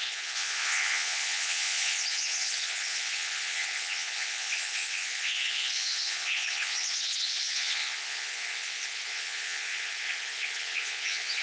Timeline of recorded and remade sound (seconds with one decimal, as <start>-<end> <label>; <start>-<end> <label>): 0.0-11.4 remade